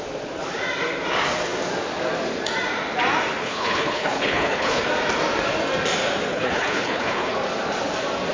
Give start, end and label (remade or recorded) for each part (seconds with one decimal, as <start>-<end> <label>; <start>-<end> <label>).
0.0-3.4 recorded; 3.4-4.8 remade; 4.8-6.3 recorded; 6.3-7.3 remade; 7.3-8.3 recorded